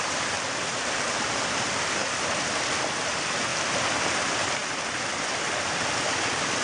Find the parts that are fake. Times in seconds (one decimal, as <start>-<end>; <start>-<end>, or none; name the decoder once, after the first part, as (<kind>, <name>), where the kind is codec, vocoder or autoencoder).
none